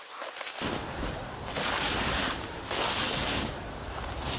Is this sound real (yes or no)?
yes